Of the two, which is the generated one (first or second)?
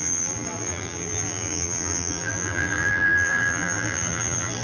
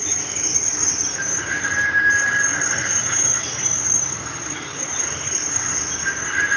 first